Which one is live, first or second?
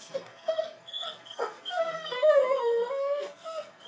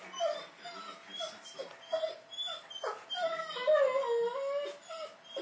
second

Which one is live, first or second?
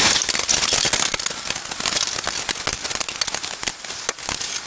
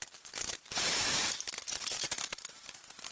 first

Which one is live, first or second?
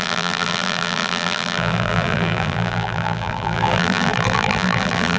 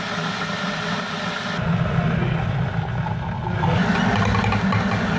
second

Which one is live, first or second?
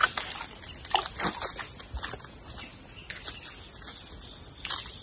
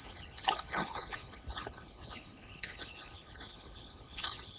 first